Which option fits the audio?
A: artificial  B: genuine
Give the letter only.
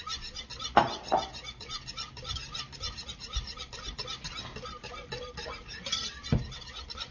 B